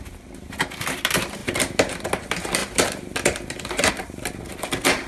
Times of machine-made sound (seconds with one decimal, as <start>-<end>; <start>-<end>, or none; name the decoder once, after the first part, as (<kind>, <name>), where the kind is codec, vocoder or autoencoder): none